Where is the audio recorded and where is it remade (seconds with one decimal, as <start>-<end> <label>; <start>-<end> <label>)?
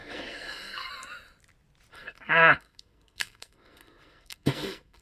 0.0-0.9 remade; 0.9-1.9 recorded; 1.9-5.0 remade